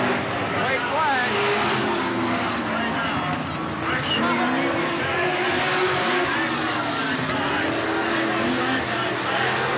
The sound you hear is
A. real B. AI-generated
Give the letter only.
A